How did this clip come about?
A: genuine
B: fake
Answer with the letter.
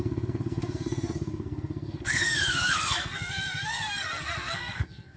B